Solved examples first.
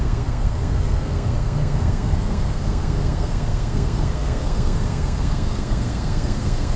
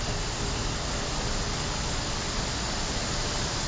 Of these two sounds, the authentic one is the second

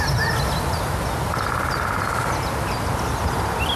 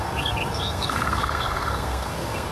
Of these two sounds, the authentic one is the first